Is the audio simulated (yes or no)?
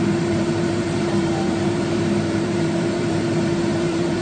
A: yes